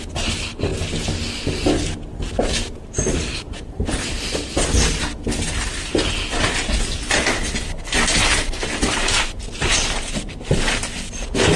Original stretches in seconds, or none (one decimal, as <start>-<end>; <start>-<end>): 0.0-11.6